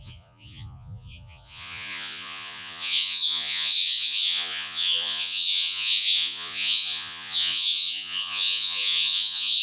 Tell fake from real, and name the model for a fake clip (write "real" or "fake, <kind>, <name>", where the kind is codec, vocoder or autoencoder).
fake, vocoder, Vocos